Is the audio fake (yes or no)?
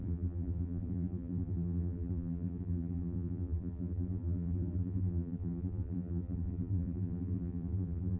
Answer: yes